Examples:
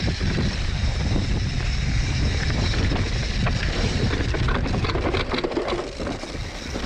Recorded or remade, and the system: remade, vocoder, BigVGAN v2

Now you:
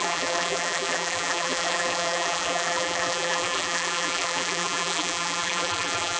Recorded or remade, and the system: remade, vocoder, BigVGAN v2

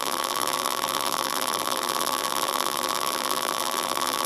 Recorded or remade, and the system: remade, vocoder, BigVGAN v2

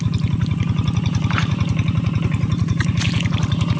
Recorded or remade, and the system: remade, vocoder, BigVGAN v2